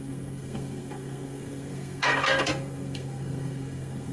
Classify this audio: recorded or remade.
remade